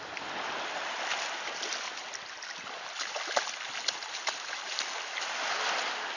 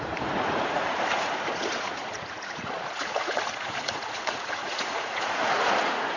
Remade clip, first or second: second